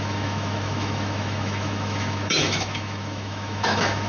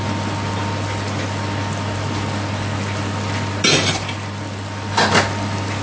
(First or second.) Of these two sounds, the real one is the second